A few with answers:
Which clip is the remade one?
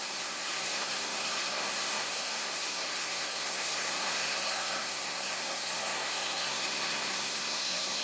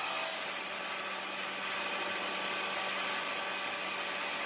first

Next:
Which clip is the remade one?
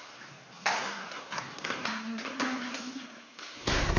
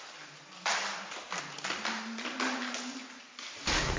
first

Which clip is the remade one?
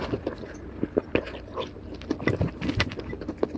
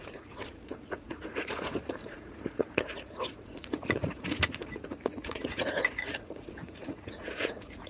second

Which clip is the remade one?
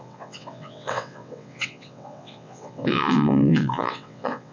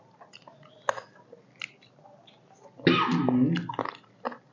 first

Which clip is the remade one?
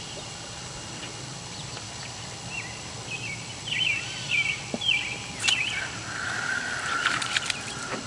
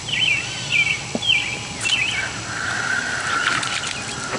first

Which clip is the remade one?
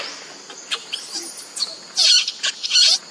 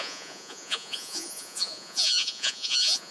second